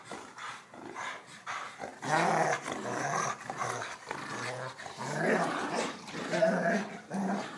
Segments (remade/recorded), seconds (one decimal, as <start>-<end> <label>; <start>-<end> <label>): 0.0-1.9 remade; 1.9-3.0 recorded; 3.0-7.6 remade